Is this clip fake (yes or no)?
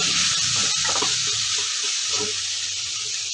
no